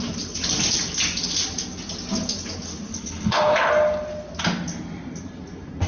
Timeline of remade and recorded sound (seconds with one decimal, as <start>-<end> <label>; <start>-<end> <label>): 0.0-2.9 recorded; 2.9-3.7 remade; 3.7-5.9 recorded

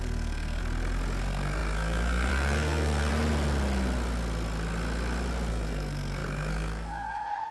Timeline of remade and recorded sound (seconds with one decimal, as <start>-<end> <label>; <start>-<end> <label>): 0.0-0.6 remade; 0.6-1.2 recorded; 1.2-3.1 remade; 3.1-5.5 recorded; 5.5-7.5 remade

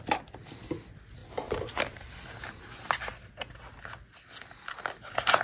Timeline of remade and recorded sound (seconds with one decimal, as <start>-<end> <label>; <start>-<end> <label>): 0.0-1.2 recorded; 1.2-2.0 remade; 2.0-5.4 recorded

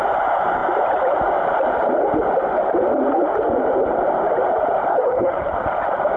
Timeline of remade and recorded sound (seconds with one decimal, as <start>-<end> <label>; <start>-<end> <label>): 0.0-4.9 recorded; 4.9-5.5 remade; 5.5-6.2 recorded

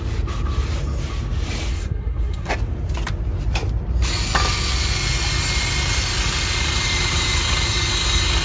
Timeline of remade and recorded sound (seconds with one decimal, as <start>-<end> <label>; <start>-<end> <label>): 0.0-1.7 recorded; 1.7-2.5 remade; 2.5-8.4 recorded

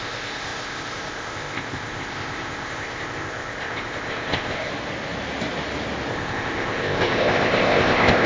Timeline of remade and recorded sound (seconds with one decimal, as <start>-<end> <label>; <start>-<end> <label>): 0.0-4.7 remade; 4.7-6.1 recorded; 6.1-8.3 remade

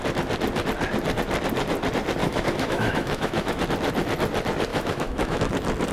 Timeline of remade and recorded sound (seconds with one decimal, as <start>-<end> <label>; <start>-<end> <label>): 0.0-2.2 recorded; 2.2-3.6 remade; 3.6-4.7 recorded; 4.7-5.4 remade; 5.4-5.9 recorded